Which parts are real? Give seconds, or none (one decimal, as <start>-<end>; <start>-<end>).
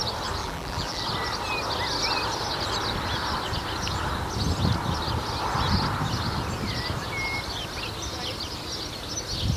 0.0-0.4; 1.0-9.6